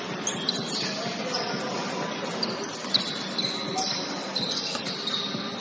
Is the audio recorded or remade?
recorded